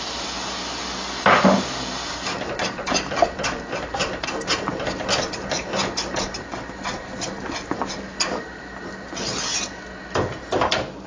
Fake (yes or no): no